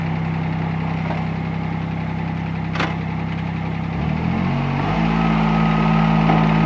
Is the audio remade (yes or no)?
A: no